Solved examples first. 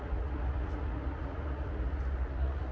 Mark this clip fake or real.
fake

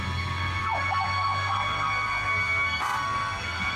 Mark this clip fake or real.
fake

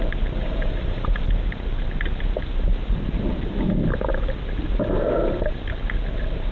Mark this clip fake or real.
real